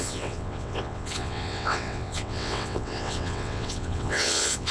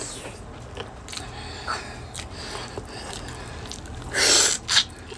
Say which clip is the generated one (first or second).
first